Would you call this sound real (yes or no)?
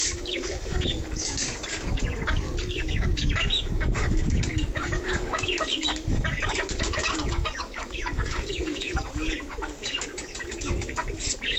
no